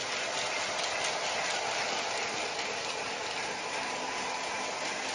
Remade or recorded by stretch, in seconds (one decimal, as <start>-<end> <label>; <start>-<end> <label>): 0.0-5.1 recorded